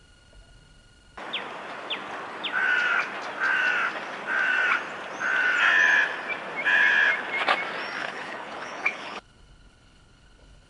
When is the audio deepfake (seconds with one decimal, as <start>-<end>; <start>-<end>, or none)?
8.0-10.7